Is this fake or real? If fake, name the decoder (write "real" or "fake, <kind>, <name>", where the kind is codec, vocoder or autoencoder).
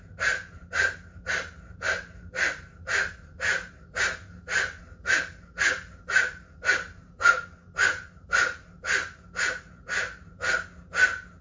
real